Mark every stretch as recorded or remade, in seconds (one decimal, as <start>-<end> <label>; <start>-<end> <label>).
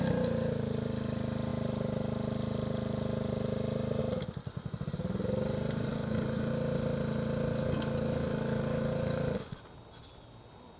0.0-5.9 recorded; 5.9-6.5 remade; 6.5-7.5 recorded; 7.5-9.6 remade; 9.6-10.8 recorded